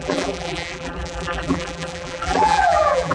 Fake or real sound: fake